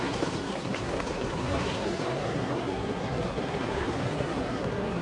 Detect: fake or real fake